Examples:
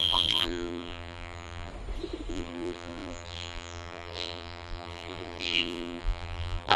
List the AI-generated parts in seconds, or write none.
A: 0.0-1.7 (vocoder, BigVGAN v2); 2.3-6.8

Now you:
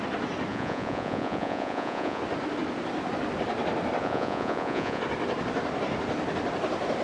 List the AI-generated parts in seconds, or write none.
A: 0.5-2.2 (vocoder, Vocos); 4.0-5.0